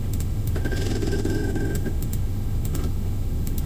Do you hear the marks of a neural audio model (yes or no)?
yes